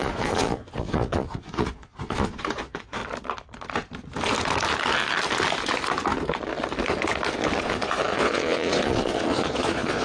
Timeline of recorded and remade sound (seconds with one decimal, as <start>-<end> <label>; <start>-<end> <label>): 0.0-3.0 remade; 3.0-7.6 recorded; 7.6-10.0 remade